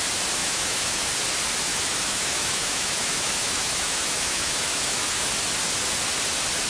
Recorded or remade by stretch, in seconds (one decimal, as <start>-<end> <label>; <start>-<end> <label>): 0.0-0.4 recorded; 0.4-1.1 remade; 1.1-1.7 recorded; 1.7-5.3 remade; 5.3-6.7 recorded